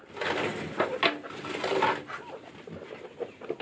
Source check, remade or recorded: recorded